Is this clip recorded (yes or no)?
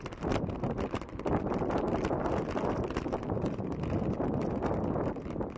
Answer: yes